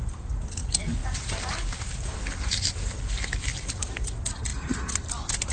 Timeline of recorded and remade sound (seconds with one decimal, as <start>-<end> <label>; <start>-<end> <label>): 0.0-5.5 recorded